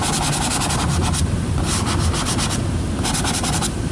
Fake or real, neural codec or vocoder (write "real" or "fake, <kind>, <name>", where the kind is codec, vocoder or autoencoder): real